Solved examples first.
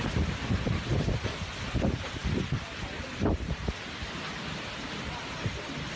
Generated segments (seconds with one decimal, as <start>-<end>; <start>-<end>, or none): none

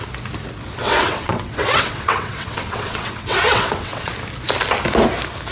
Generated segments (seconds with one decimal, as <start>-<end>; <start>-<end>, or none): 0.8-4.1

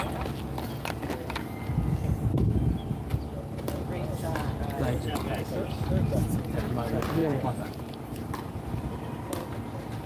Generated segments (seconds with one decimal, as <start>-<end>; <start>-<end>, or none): 7.2-9.3